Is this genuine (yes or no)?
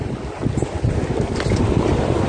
yes